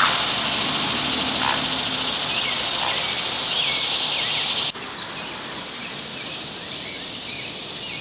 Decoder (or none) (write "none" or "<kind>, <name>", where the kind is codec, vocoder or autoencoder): none